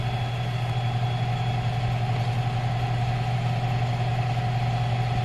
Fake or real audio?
real